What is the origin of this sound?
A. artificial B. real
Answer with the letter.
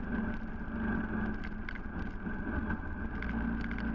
B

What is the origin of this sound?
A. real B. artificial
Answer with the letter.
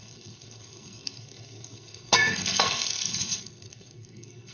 B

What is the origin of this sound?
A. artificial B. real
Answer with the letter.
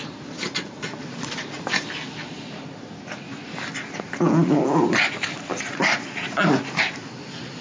B